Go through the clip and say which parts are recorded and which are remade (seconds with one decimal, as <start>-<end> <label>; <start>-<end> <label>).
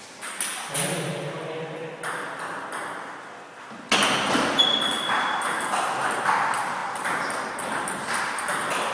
0.0-8.9 recorded